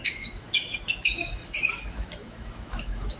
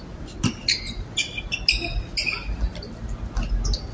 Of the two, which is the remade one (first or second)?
first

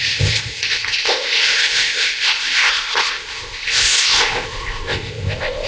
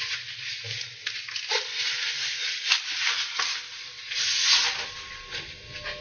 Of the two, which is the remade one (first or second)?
first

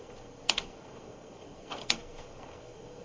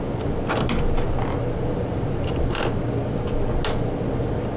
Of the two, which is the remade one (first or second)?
first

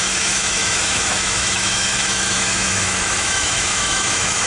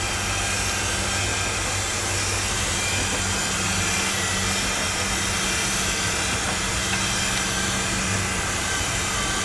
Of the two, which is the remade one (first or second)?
first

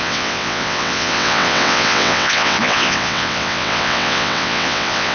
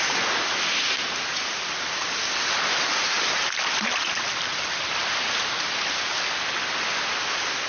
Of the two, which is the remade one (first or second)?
first